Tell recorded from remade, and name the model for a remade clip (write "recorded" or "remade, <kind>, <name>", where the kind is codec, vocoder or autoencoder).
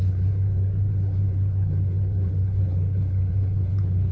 remade, codec, HILCodec